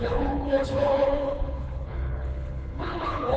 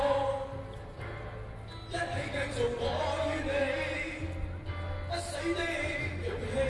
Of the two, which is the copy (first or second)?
first